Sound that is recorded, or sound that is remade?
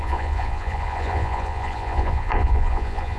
remade